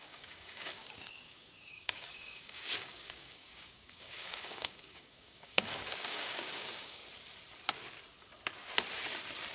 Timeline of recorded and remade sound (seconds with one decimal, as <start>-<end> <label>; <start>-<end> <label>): 0.0-7.0 remade; 7.0-9.5 recorded